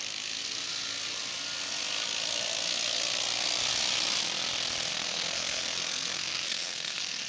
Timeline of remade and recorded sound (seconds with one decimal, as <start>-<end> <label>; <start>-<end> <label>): 0.0-4.9 recorded; 4.9-7.3 remade